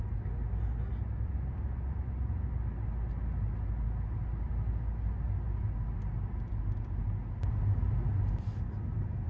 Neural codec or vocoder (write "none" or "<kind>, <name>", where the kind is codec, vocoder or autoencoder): none